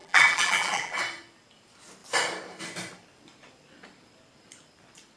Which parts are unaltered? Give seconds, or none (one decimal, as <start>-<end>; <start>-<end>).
1.0-5.2